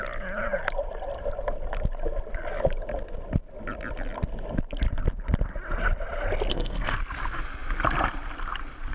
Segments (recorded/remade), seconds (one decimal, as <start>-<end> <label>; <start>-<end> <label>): 0.0-6.5 recorded; 6.5-7.0 remade; 7.0-8.9 recorded